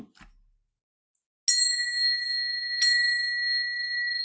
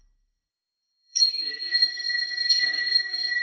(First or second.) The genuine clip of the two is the first